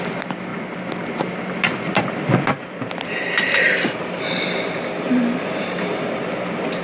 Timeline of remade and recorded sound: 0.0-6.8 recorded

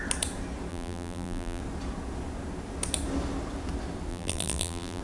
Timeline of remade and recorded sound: 0.0-0.7 recorded; 0.7-1.6 remade; 1.6-4.1 recorded; 4.1-5.0 remade

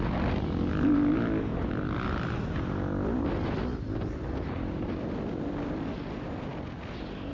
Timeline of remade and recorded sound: 0.0-7.3 recorded